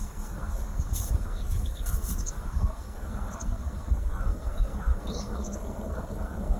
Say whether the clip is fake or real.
fake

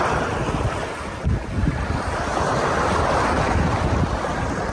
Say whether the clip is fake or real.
real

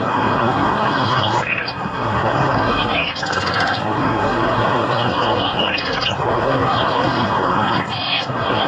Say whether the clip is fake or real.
fake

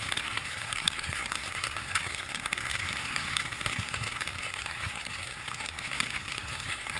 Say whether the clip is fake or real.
fake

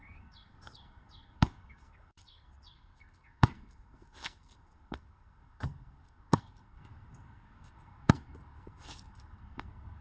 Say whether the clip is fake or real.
fake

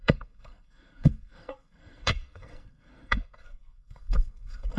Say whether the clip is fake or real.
fake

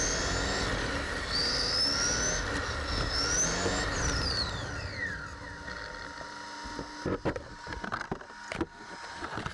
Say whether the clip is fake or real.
real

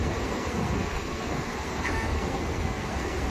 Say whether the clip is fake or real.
fake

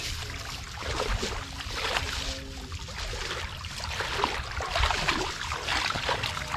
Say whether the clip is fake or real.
real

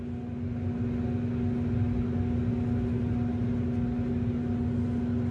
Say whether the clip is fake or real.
real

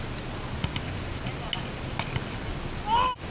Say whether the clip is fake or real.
real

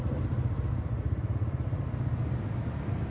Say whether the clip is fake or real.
real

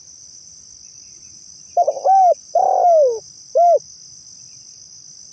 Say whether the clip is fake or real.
real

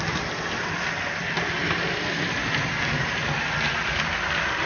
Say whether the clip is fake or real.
real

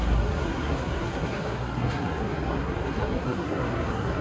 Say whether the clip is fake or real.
fake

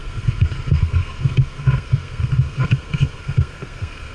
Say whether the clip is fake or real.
fake